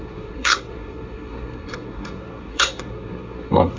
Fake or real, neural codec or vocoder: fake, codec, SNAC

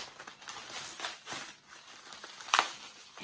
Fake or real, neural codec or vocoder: real